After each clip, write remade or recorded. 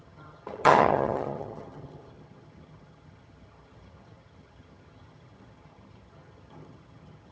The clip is remade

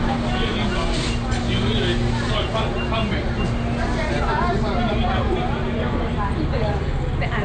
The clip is recorded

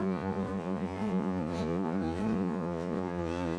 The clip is remade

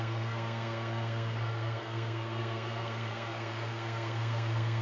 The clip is remade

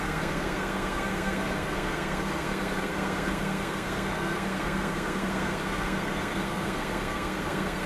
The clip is remade